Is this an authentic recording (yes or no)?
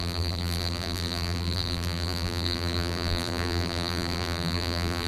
no